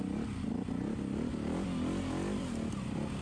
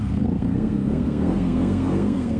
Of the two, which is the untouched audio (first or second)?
first